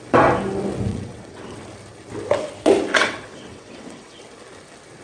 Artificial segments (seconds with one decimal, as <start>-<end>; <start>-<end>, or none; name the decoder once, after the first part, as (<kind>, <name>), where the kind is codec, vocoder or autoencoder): 0.9-1.6 (vocoder, WaveNeXt); 2.9-4.2